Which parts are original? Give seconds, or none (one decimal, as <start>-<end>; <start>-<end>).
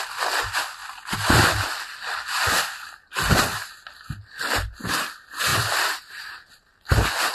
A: 0.0-0.8; 4.9-5.5